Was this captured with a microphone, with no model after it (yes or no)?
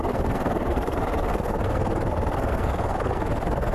no